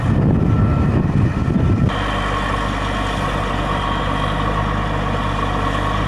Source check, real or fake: real